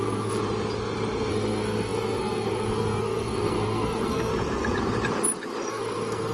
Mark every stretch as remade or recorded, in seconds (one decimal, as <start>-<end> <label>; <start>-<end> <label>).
0.0-0.4 remade; 0.4-1.3 recorded; 1.3-4.3 remade; 4.3-5.7 recorded; 5.7-6.3 remade